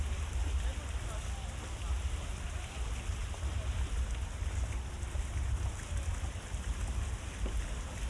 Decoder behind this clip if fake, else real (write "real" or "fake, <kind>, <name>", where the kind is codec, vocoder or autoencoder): real